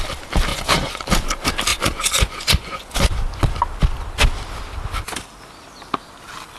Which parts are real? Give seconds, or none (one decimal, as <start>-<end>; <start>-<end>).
0.0-0.5; 1.1-1.7; 3.6-6.6

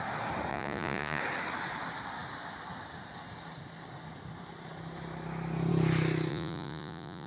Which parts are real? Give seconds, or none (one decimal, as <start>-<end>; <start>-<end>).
0.0-0.5; 1.2-6.3

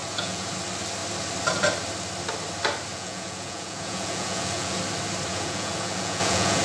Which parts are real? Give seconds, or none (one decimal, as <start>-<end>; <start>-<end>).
0.5-2.9; 4.8-5.3